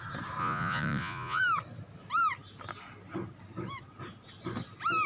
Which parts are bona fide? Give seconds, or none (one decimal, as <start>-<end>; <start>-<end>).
0.0-0.4; 1.4-5.1